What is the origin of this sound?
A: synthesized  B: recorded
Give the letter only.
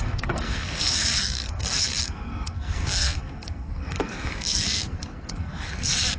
A